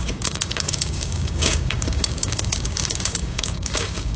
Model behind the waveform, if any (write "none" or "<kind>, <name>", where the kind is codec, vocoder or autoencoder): codec, DAC